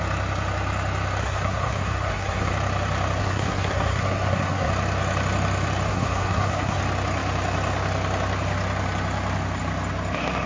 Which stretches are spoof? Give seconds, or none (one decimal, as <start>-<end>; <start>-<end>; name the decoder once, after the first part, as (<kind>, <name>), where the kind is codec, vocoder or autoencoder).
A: 1.2-2.5 (codec, SNAC); 3.2-4.7; 5.9-6.8